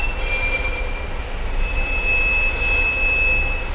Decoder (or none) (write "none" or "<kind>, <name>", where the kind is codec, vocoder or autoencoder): none